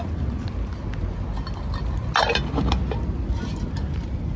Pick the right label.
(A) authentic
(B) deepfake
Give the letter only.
A